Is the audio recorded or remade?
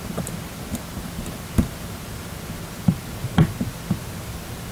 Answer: recorded